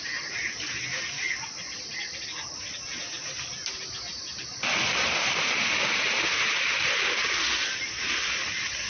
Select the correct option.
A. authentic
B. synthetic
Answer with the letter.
A